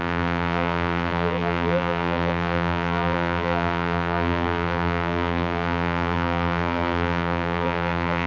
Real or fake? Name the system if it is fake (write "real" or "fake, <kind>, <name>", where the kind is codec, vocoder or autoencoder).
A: fake, vocoder, BigVGAN v2